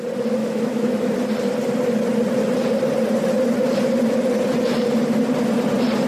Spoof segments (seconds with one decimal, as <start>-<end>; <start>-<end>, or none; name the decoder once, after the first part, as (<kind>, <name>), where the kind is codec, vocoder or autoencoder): 0.4-1.1 (autoencoder, DAC-VAE)